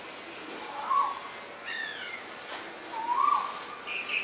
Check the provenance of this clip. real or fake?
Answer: real